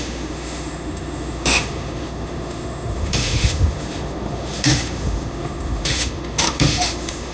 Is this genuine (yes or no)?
no